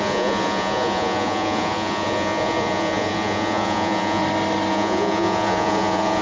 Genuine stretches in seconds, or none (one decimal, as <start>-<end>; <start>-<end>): 4.2-4.7